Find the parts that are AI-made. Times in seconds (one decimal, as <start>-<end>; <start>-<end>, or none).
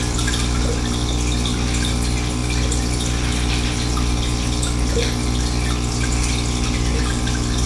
none